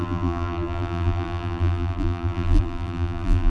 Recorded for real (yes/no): no